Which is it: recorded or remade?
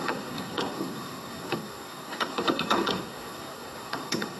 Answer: remade